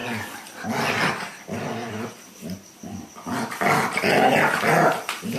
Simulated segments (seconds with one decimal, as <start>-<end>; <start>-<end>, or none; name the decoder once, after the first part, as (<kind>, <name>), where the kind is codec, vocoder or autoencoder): none